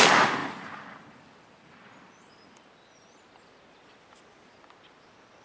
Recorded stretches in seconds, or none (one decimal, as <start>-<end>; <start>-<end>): 0.0-0.4; 3.2-5.4